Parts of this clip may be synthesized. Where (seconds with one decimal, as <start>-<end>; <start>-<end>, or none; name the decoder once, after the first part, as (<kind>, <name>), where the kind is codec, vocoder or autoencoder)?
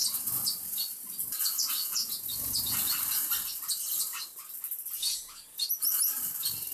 1.8-2.8 (vocoder, Vocos); 5.0-5.7